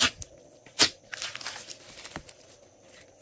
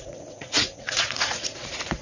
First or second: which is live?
first